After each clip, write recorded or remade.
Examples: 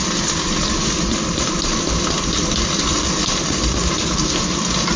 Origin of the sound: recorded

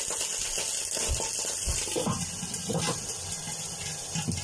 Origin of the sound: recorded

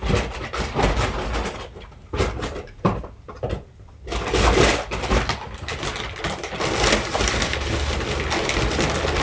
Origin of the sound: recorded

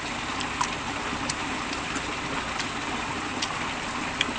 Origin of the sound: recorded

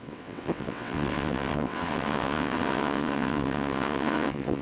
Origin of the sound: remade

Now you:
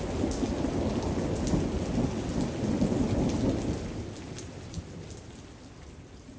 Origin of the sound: recorded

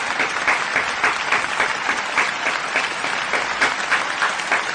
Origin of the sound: recorded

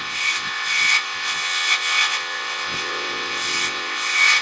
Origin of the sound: remade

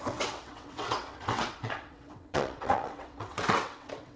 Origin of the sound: remade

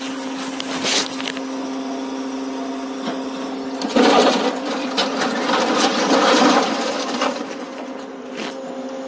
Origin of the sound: recorded